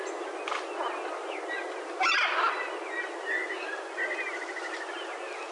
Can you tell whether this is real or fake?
real